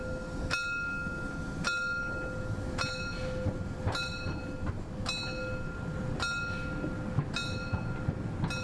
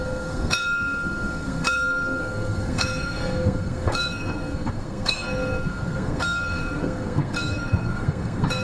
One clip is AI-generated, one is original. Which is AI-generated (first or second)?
second